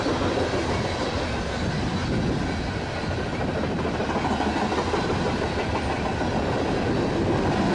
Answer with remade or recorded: recorded